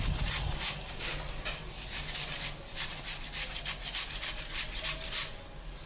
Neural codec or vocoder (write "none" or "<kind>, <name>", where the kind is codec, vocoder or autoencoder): none